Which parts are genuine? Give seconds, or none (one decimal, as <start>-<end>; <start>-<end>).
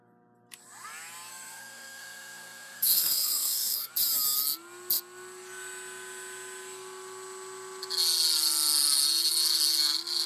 0.0-1.3; 3.9-10.3